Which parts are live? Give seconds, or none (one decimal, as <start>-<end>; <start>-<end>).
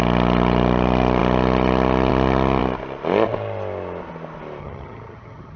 0.0-4.6